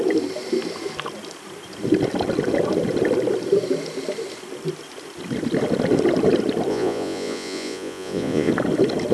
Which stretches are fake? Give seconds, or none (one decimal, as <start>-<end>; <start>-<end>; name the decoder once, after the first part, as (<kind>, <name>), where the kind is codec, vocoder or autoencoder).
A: 6.7-8.5 (vocoder, Vocos)